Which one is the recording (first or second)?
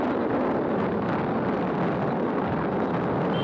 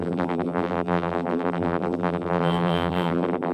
first